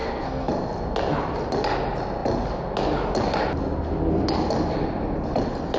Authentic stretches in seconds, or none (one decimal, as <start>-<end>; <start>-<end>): 0.5-5.8